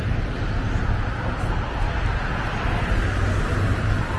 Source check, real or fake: real